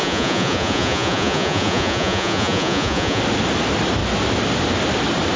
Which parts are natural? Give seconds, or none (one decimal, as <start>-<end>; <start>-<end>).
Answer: 3.2-5.4

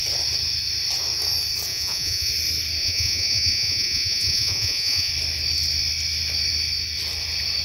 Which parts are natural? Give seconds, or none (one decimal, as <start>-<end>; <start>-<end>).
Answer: 0.0-1.7; 2.3-2.8; 5.1-7.6

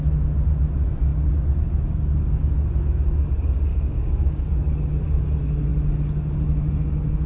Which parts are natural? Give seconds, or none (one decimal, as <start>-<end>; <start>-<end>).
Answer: 0.0-3.7; 4.5-7.3

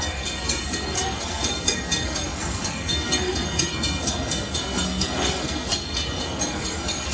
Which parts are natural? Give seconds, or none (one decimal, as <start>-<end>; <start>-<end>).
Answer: none

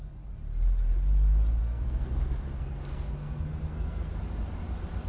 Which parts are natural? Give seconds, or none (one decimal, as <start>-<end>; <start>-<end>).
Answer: 0.0-1.6; 4.2-5.1

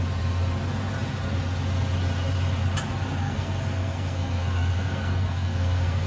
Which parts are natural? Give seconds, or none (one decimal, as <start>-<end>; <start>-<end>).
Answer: 0.0-3.2

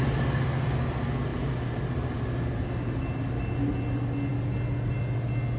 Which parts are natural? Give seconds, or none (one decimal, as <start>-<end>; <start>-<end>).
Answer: 0.0-1.3; 3.7-5.6

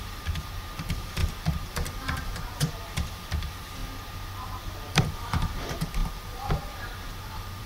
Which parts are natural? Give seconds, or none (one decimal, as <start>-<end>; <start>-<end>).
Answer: 3.8-4.9